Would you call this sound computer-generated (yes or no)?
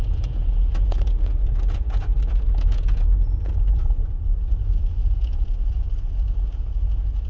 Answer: yes